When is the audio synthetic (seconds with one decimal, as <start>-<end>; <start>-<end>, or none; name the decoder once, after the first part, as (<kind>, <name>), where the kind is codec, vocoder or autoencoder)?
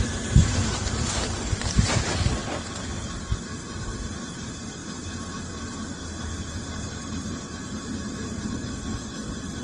0.0-2.4 (vocoder, BigVGAN v2); 3.4-4.8; 6.9-9.6